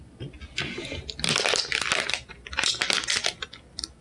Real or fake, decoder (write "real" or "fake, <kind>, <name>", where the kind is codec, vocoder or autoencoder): real